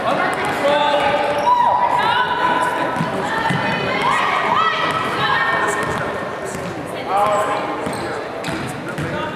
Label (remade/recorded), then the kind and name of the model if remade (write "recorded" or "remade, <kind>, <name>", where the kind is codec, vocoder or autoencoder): recorded